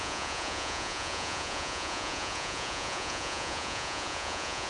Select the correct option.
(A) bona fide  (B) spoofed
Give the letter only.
B